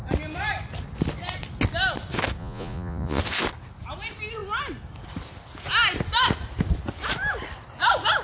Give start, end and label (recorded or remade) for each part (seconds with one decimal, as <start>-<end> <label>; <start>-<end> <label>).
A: 0.0-2.4 recorded; 2.4-3.2 remade; 3.2-8.2 recorded